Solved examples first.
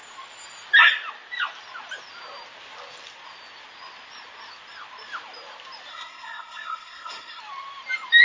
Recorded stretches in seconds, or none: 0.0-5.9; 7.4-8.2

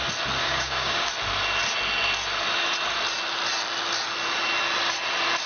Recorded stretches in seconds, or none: 0.0-0.4; 1.1-5.5

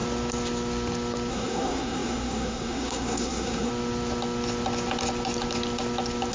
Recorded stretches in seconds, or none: 0.0-1.3; 3.7-6.3